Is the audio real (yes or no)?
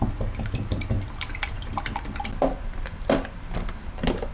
no